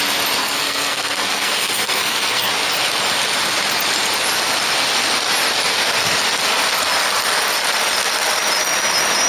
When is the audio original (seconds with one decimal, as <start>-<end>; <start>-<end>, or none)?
0.0-0.4; 2.5-9.3